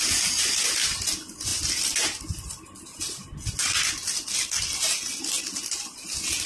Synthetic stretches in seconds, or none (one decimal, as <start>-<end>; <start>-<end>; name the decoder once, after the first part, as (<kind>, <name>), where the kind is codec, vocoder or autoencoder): none